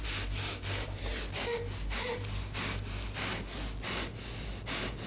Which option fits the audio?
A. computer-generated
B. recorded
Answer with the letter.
B